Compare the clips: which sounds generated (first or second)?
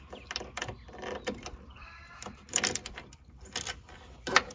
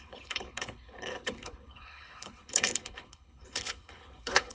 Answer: second